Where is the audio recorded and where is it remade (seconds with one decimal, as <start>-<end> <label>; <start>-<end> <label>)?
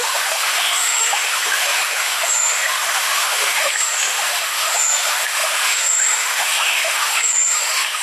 0.0-8.0 remade